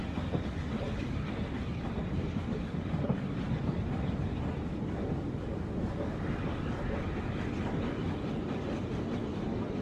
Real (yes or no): yes